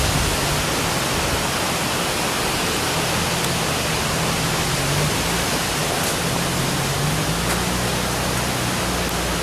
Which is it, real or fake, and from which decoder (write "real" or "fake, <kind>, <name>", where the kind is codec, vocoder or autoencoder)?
real